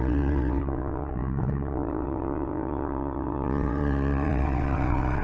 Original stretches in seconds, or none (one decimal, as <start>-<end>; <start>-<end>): none